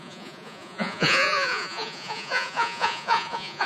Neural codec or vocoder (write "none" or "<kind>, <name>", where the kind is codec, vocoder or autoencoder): vocoder, Vocos